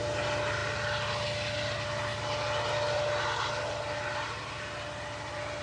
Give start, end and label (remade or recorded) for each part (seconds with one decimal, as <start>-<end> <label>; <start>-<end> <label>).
0.0-5.6 recorded